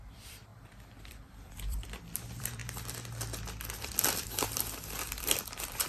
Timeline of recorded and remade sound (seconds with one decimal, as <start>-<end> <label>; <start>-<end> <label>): 0.0-0.5 remade; 0.5-1.1 recorded; 1.1-2.6 remade; 2.6-4.1 recorded; 4.1-5.9 remade